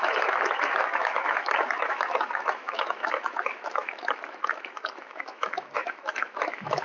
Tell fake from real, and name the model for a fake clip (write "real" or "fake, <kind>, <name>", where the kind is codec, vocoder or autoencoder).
fake, autoencoder, DAC-VAE